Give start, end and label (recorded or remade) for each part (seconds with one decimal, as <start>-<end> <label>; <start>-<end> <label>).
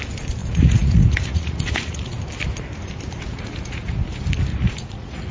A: 0.0-0.4 recorded; 0.4-2.2 remade; 2.2-3.3 recorded; 3.3-4.0 remade; 4.0-4.5 recorded; 4.5-5.3 remade